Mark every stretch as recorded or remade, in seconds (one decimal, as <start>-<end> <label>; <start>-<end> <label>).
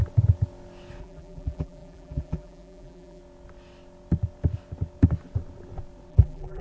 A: 0.0-1.0 recorded; 1.0-3.2 remade; 3.2-6.1 recorded; 6.1-6.6 remade